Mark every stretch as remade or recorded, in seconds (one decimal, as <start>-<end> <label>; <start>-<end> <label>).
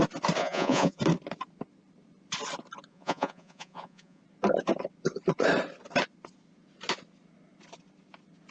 0.0-0.4 recorded; 0.4-1.0 remade; 1.0-2.9 recorded; 2.9-4.2 remade; 4.2-8.5 recorded